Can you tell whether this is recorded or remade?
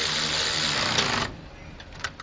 recorded